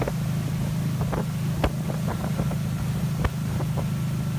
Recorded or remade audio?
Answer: recorded